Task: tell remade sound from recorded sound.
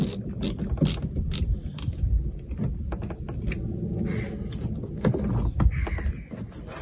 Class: recorded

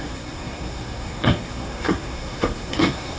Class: remade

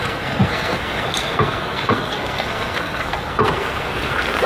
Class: remade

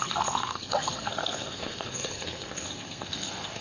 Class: remade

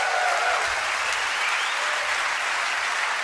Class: recorded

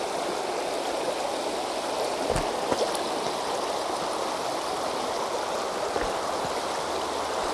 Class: recorded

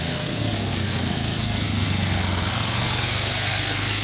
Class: remade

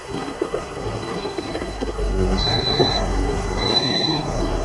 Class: remade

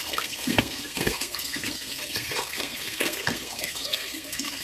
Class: remade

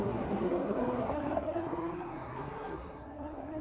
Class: remade